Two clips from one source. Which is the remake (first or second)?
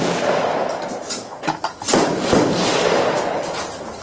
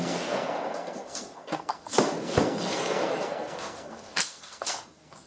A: second